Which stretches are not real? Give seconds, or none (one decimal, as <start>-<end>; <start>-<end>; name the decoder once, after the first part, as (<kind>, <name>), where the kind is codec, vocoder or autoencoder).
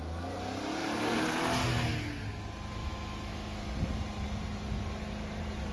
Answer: 2.8-3.6 (autoencoder, DAC-VAE)